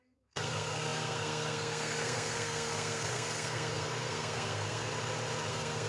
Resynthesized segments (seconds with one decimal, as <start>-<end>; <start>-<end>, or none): 0.0-4.9; 5.5-5.9